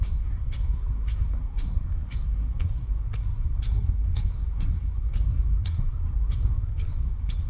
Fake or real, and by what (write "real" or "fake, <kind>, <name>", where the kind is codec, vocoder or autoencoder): fake, codec, SNAC